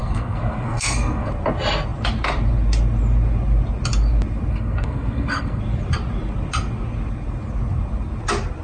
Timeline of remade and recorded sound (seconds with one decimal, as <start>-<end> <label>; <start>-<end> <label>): 0.0-1.3 remade; 1.3-4.5 recorded; 4.5-5.6 remade; 5.6-8.6 recorded